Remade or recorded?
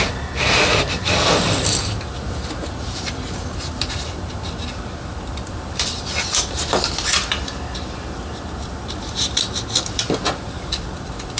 remade